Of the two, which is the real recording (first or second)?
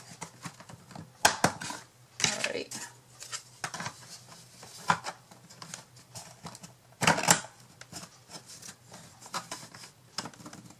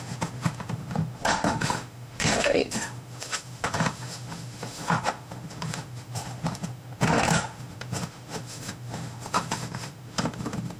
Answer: first